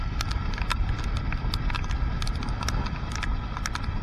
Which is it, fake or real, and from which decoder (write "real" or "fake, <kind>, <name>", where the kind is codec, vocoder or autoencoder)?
real